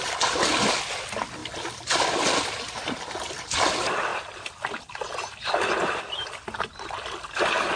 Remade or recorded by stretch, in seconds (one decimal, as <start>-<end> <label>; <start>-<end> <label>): 0.0-7.8 recorded